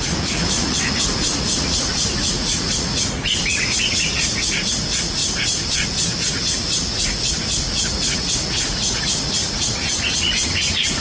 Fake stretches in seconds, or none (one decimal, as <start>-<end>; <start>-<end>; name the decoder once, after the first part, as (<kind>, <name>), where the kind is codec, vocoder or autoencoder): 0.0-5.2 (vocoder, Vocos); 6.3-11.0